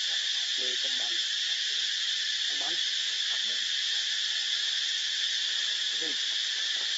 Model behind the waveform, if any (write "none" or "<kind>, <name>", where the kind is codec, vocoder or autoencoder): none